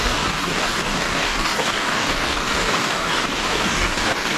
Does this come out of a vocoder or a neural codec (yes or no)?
yes